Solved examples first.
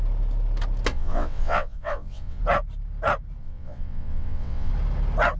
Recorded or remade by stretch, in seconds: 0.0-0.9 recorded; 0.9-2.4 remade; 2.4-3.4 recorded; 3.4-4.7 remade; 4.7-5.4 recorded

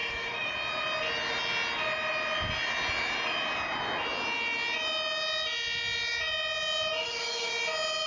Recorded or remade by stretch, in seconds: 0.0-0.5 remade; 0.5-7.0 recorded; 7.0-7.5 remade; 7.5-8.1 recorded

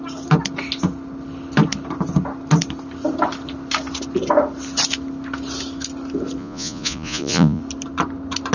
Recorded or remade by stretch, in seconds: 0.0-6.4 recorded; 6.4-7.6 remade; 7.6-8.5 recorded

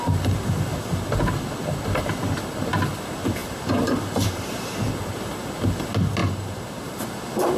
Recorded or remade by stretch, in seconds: 0.0-3.4 recorded; 3.4-4.8 remade; 4.8-6.2 recorded; 6.2-7.6 remade

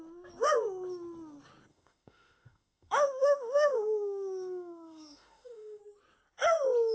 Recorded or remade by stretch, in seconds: 0.0-1.7 recorded; 1.7-5.8 remade; 5.8-6.9 recorded